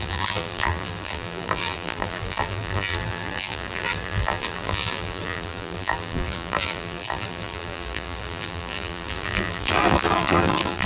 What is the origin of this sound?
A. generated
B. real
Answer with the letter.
A